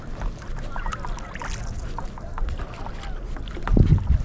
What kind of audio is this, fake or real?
real